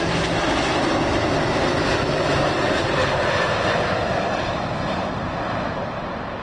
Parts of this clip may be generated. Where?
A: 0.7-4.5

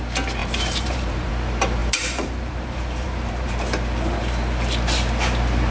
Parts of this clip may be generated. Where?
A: 0.4-1.3; 1.8-3.5

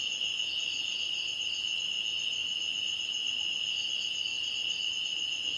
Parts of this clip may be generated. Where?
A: 4.3-4.9

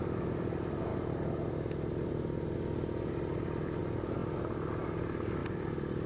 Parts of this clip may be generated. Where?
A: 0.0-0.9; 3.8-6.1

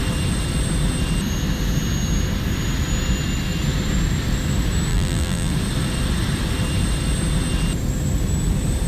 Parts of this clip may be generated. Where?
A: 4.9-5.5